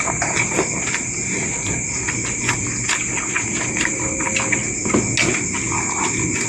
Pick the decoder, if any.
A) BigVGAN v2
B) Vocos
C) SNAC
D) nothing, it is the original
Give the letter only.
D